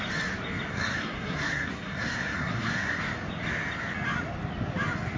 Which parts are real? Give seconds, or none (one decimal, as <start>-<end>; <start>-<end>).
0.0-0.7; 3.0-5.2